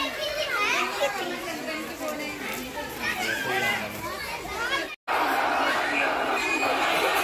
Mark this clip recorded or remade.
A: recorded